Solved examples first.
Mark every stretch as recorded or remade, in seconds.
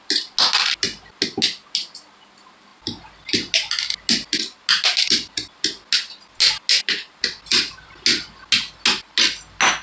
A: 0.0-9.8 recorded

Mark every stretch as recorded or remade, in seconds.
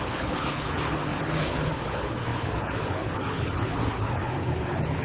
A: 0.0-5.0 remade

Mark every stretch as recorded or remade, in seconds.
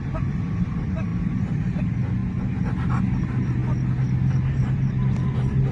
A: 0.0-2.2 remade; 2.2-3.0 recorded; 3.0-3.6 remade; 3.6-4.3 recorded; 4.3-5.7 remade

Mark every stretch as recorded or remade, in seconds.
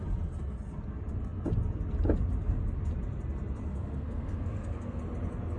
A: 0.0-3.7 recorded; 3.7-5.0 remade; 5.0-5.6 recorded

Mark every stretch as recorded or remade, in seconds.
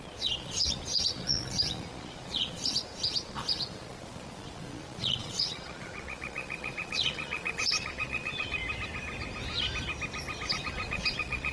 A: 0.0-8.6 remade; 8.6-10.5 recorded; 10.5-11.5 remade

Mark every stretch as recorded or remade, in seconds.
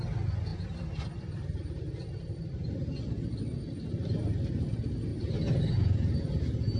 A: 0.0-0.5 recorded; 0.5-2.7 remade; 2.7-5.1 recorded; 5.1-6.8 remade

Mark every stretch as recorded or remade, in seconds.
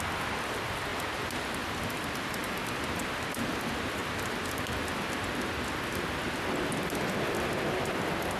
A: 0.0-8.4 recorded